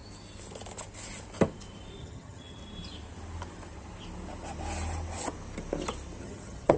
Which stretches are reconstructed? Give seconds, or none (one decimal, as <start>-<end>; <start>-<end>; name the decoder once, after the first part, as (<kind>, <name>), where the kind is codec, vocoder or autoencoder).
2.0-2.6 (vocoder, HiFi-GAN); 6.2-6.8